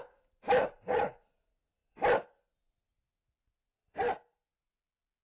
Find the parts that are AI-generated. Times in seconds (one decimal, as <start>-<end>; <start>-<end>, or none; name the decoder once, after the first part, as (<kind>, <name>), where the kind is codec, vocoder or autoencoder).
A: 0.6-1.4 (vocoder, Vocos)